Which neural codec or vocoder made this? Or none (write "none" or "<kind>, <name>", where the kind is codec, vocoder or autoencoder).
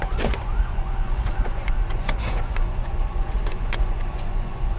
vocoder, Vocos